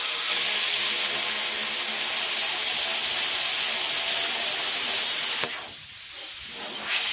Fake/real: real